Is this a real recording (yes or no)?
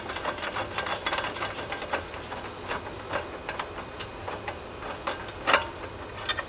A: yes